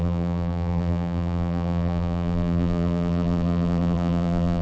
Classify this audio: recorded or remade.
remade